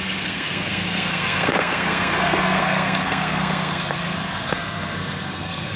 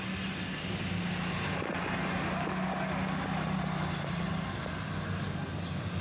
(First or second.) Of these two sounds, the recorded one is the second